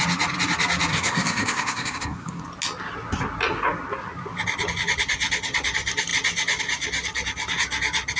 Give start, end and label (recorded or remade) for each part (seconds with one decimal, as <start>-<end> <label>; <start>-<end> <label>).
0.0-0.9 recorded; 0.9-2.4 remade; 2.4-8.2 recorded